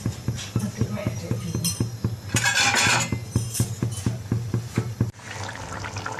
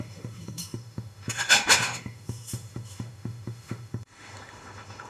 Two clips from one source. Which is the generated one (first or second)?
second